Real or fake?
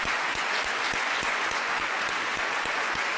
fake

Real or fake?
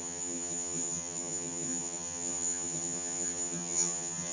fake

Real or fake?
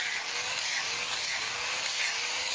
fake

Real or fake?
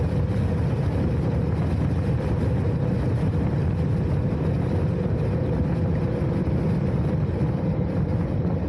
real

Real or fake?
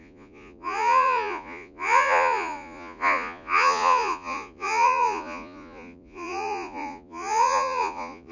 fake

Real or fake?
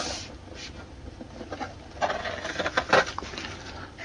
real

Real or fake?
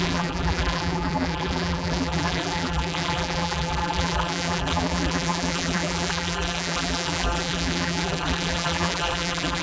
fake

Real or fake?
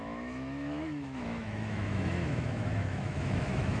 fake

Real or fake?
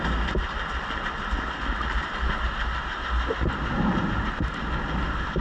real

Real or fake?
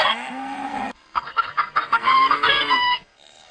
fake